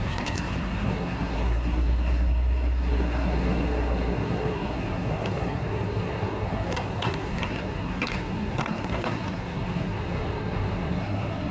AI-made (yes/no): yes